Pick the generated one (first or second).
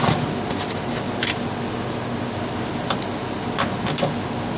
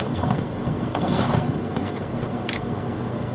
second